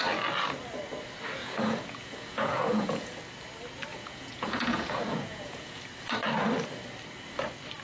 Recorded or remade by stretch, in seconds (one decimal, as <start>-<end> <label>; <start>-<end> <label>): 0.0-1.4 recorded; 1.4-3.2 remade; 3.2-3.9 recorded; 3.9-5.8 remade; 5.8-7.8 recorded